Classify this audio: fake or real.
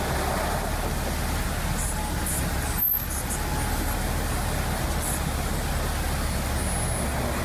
real